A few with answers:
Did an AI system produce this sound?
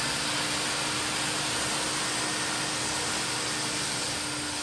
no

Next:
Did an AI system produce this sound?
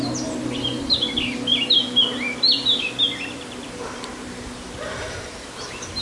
no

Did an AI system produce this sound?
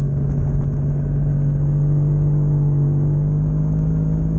no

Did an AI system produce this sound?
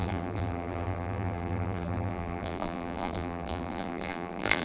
yes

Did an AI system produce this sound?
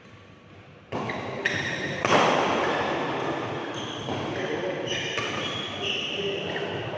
no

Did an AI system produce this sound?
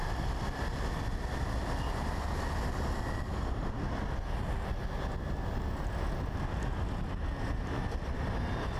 no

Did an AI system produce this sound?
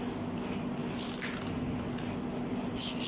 no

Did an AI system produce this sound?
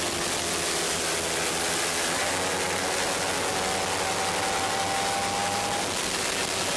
no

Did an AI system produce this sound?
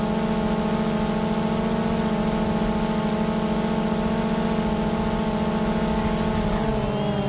no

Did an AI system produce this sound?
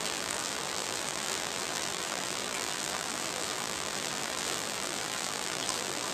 yes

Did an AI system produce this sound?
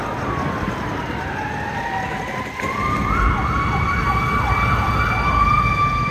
no